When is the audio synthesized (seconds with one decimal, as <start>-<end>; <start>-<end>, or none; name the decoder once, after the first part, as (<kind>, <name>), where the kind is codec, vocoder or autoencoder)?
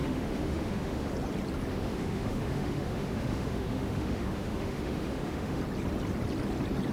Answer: 0.0-1.1 (autoencoder, DAC-VAE); 1.7-5.6